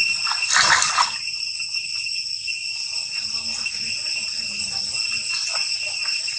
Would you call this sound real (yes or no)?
yes